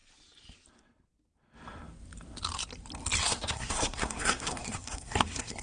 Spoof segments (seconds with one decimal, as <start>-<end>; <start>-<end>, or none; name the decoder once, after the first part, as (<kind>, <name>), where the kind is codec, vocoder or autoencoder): 3.2-5.6 (codec, SNAC)